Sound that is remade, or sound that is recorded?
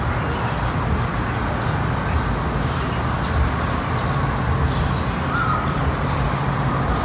recorded